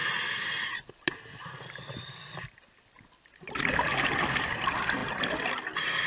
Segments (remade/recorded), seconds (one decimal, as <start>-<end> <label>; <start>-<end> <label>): 0.0-6.1 recorded

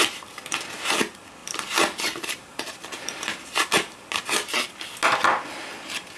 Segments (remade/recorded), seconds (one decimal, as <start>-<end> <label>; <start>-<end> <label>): 0.0-1.4 recorded; 1.4-4.1 remade; 4.1-6.2 recorded

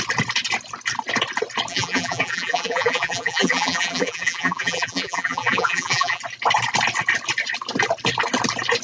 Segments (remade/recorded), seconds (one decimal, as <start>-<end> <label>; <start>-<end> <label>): 0.0-1.7 recorded; 1.7-6.2 remade; 6.2-8.8 recorded